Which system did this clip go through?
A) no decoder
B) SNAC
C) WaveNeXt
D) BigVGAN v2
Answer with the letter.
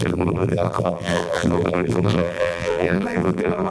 D